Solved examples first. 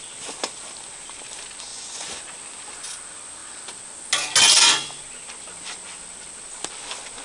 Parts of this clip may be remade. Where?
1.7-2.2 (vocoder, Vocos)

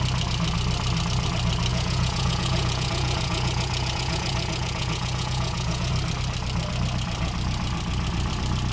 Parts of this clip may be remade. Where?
1.7-5.9 (vocoder, Vocos)

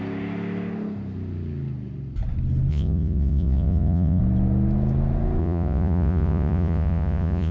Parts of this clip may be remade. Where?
2.7-4.2 (vocoder, Vocos); 5.4-7.5

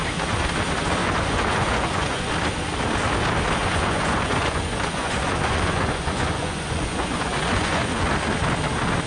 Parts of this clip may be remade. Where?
1.0-2.3 (vocoder, Vocos); 3.6-8.1

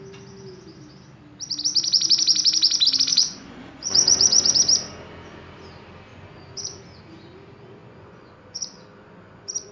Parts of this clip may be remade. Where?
3.1-4.5 (vocoder, Vocos); 6.1-6.8; 7.8-9.7